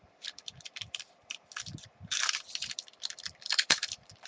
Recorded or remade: remade